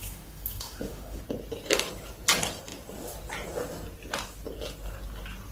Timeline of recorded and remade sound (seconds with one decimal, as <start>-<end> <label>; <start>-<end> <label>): 0.0-1.2 remade; 1.2-5.5 recorded